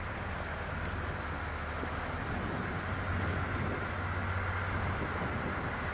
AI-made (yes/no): no